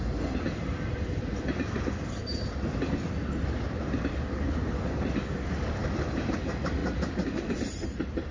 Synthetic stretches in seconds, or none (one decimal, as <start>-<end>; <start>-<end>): none

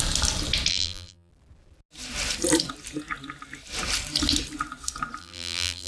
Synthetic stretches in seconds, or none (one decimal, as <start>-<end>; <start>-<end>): 0.7-1.3; 5.2-5.9

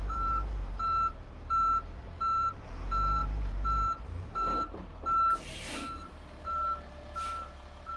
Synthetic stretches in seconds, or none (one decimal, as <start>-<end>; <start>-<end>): 0.0-8.0